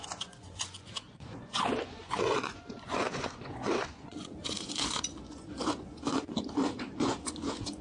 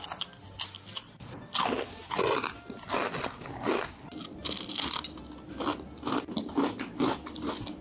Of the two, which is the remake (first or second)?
first